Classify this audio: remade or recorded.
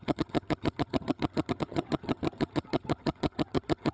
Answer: remade